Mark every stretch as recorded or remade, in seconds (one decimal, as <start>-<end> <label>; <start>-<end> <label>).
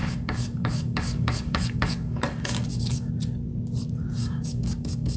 0.0-3.1 remade; 3.1-4.2 recorded; 4.2-5.2 remade